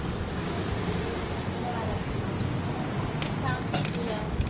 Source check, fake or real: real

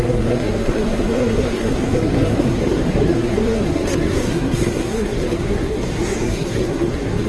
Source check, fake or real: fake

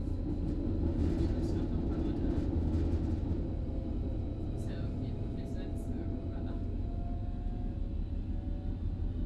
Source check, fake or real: real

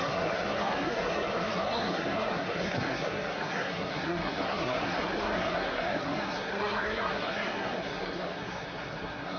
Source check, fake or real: fake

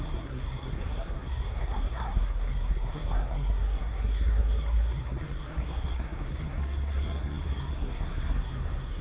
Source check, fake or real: fake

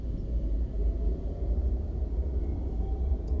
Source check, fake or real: real